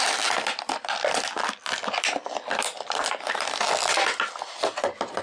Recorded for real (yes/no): yes